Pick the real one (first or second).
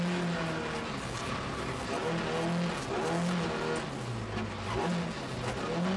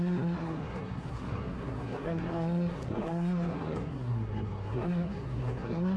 first